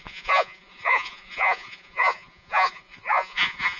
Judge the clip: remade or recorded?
remade